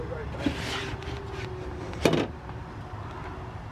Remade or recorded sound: recorded